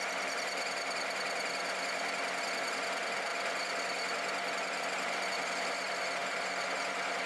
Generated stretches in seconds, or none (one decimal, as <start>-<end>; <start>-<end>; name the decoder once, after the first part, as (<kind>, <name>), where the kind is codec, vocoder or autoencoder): none